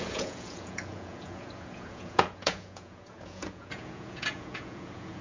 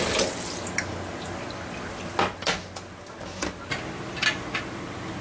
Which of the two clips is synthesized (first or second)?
first